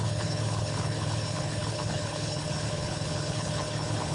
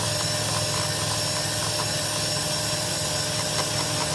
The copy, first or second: first